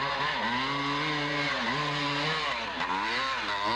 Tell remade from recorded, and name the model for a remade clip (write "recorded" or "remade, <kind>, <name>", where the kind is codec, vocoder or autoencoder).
recorded